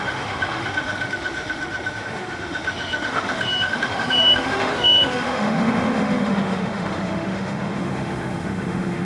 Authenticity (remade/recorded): remade